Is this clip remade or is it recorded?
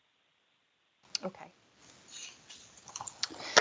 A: recorded